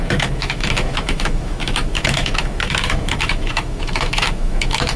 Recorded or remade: remade